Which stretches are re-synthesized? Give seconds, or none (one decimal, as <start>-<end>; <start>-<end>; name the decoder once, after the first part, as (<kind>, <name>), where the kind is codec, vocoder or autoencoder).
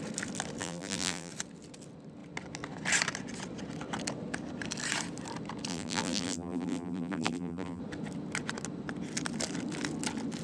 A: 0.6-1.3 (vocoder, BigVGAN v2); 5.7-7.8